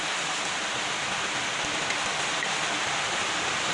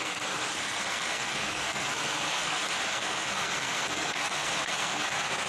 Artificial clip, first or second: second